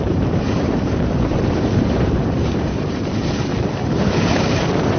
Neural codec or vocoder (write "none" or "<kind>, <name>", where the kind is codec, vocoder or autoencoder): vocoder, BigVGAN v2